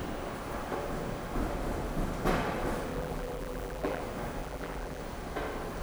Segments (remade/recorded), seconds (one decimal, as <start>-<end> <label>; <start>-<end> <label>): 0.0-2.9 recorded; 2.9-4.0 remade; 4.0-4.4 recorded; 4.4-5.0 remade; 5.0-5.8 recorded